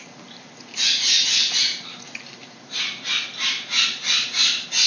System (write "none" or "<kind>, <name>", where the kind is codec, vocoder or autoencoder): none